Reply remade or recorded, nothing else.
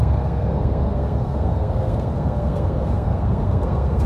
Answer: remade